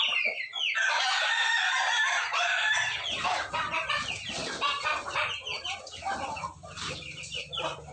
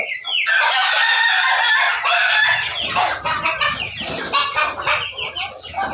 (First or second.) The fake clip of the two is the first